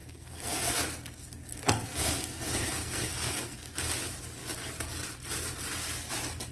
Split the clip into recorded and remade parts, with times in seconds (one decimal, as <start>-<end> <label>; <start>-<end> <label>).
0.0-3.9 remade; 3.9-6.5 recorded